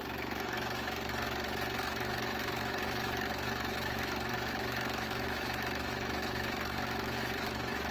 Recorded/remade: remade